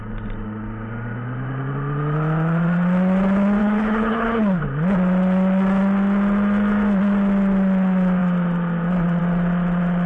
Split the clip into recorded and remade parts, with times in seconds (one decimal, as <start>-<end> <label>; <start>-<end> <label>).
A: 0.0-3.6 recorded; 3.6-4.6 remade; 4.6-10.1 recorded